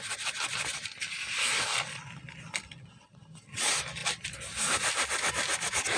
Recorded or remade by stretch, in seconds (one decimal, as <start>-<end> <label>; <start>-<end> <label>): 0.0-6.0 recorded